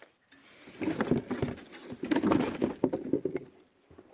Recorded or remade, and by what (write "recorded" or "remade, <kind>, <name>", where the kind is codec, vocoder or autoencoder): recorded